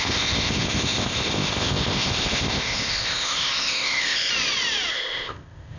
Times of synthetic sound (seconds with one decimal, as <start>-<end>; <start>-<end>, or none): 0.0-4.3; 4.9-5.8